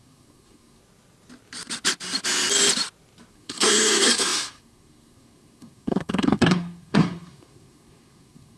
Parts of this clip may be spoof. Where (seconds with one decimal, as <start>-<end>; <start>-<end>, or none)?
0.0-0.8; 3.3-8.6